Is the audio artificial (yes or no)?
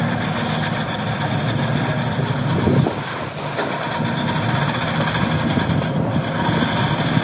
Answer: no